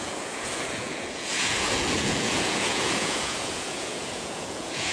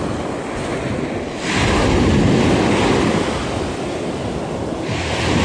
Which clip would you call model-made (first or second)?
first